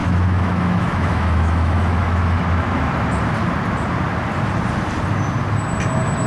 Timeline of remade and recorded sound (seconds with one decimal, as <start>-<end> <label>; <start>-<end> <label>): 0.0-2.4 remade; 2.4-6.3 recorded

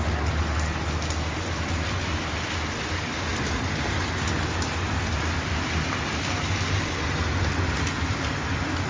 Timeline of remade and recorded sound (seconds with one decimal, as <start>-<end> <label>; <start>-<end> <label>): 0.0-8.9 recorded

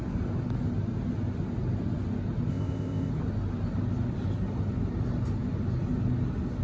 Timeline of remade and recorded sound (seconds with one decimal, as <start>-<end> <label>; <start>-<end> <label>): 0.0-2.5 recorded; 2.5-3.1 remade; 3.1-6.6 recorded

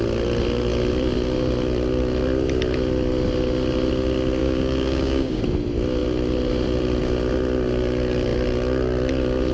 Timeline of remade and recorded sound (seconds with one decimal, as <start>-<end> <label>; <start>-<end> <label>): 0.0-4.4 recorded; 4.4-5.4 remade; 5.4-9.5 recorded

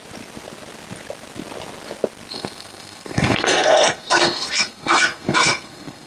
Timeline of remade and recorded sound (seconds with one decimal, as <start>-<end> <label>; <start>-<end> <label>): 0.0-2.3 recorded; 2.3-6.1 remade